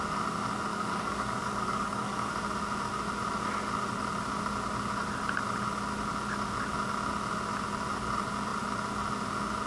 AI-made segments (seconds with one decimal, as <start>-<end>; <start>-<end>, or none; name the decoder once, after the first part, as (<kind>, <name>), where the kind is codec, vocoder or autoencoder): 0.7-2.3 (codec, DAC)